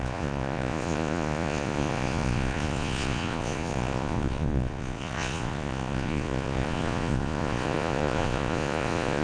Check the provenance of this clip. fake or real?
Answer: fake